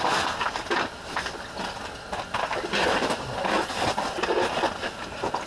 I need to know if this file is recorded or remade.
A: recorded